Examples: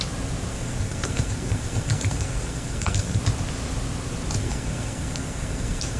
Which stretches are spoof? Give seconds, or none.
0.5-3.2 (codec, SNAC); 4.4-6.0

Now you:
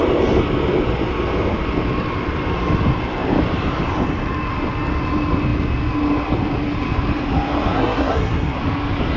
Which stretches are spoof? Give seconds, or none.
7.7-8.6 (codec, SNAC)